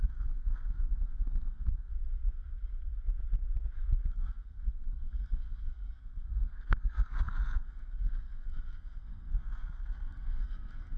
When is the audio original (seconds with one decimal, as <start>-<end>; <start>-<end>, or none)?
1.9-4.1